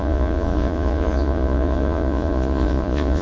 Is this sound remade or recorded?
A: remade